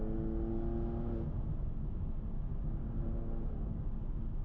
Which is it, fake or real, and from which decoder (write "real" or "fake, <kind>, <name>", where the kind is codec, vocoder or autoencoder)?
real